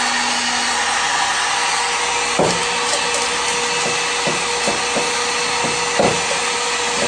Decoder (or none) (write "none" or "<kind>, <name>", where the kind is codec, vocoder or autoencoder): none